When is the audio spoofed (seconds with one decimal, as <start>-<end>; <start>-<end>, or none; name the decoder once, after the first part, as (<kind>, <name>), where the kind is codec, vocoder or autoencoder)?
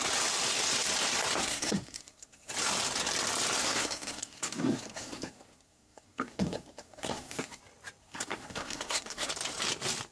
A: 1.4-2.5 (codec, SNAC); 3.6-7.6; 8.0-9.3